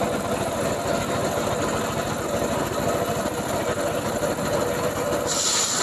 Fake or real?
real